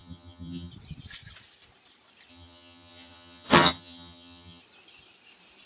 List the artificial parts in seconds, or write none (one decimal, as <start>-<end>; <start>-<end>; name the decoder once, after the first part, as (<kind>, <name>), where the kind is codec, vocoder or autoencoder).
0.0-0.7 (vocoder, HiFi-GAN); 2.3-4.6